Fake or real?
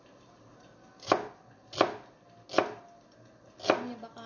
real